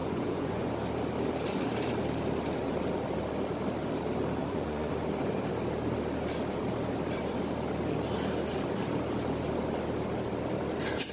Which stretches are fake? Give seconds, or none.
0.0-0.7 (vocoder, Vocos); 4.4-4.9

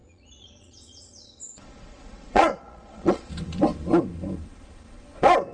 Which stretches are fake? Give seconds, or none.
0.0-3.3 (vocoder, Vocos)

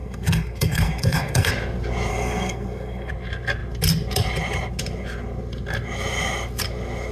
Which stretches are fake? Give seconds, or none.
0.0-1.5 (codec, SNAC); 2.1-3.1